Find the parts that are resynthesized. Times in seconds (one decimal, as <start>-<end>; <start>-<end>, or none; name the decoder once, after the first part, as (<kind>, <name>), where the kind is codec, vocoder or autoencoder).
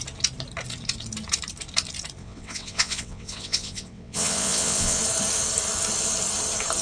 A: 2.2-5.0 (vocoder, WaveNeXt)